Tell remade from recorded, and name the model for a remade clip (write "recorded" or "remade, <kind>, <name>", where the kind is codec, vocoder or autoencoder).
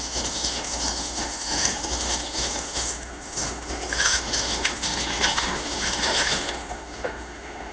remade, autoencoder, DAC-VAE